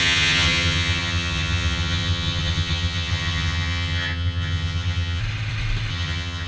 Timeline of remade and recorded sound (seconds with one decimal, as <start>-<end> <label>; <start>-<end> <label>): 0.0-5.2 remade; 5.2-5.9 recorded; 5.9-6.5 remade